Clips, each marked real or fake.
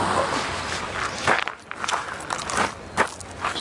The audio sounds real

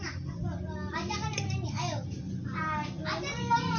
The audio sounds real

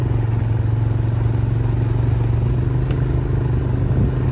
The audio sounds real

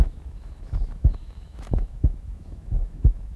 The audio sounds fake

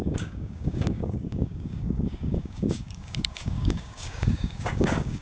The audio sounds fake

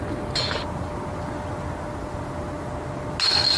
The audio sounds real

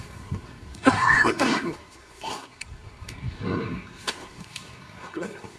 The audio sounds fake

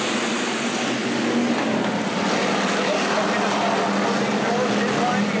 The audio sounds real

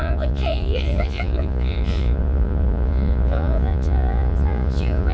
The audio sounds fake